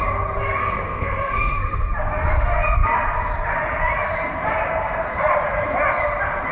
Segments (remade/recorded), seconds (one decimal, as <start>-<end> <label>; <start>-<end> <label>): 0.0-0.6 recorded; 0.6-1.9 remade; 1.9-6.5 recorded